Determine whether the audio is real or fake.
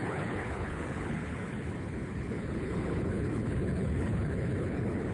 fake